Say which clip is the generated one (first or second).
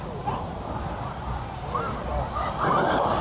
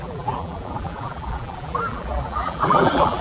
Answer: second